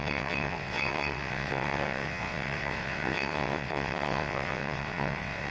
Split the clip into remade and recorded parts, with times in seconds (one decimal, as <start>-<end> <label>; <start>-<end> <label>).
0.0-5.5 remade